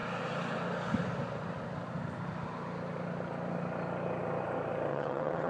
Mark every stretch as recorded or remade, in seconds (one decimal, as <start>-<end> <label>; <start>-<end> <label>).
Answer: 0.0-4.9 recorded; 4.9-5.5 remade